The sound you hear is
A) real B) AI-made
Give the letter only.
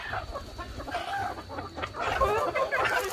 A